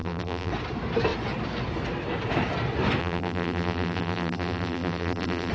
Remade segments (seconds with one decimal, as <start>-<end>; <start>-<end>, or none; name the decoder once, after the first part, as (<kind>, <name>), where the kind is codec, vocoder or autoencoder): 0.0-0.5 (vocoder, BigVGAN v2); 3.0-5.5